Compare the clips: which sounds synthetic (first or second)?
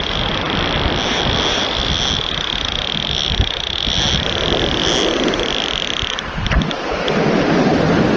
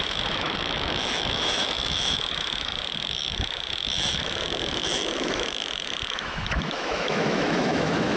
second